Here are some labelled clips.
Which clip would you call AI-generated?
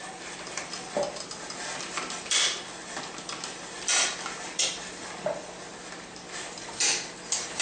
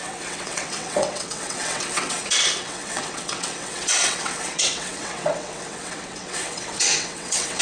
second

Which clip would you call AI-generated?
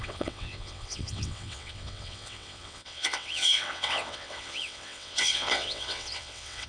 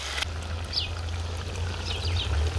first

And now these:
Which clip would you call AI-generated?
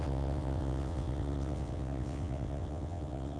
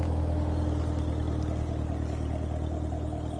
first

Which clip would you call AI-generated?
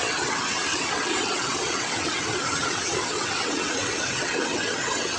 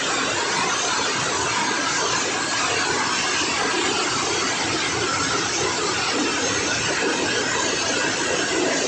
first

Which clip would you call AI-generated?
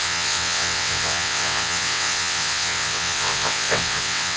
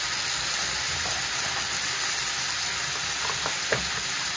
first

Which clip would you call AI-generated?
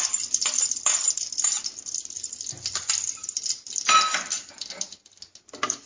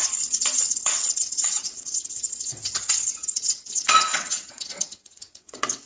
second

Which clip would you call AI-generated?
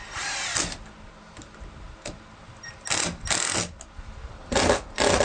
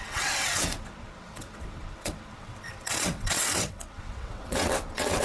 second